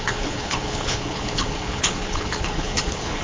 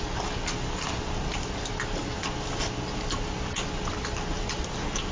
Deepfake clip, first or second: first